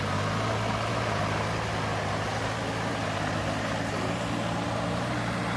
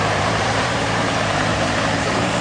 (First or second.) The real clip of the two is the first